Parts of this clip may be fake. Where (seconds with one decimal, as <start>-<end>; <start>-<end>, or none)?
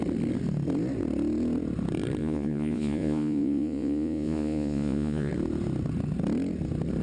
2.2-5.3